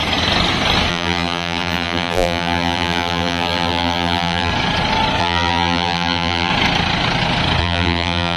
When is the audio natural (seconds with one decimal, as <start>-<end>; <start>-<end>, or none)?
0.0-0.9; 4.5-5.2; 6.5-7.6